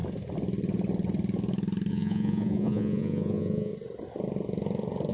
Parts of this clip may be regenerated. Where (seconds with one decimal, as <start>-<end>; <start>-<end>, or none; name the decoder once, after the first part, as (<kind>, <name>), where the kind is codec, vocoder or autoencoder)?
1.9-3.7 (vocoder, Vocos)